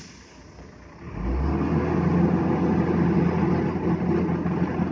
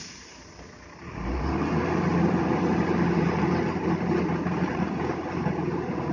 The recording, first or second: first